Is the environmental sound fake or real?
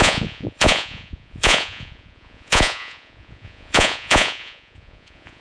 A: fake